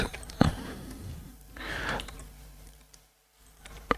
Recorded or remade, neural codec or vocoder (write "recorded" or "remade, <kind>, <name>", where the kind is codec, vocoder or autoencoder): remade, vocoder, BigVGAN v2